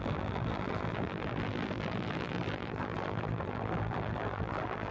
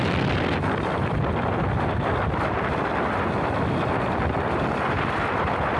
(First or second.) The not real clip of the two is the first